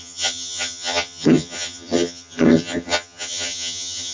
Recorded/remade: remade